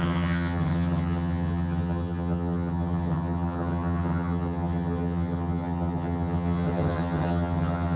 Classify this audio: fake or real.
fake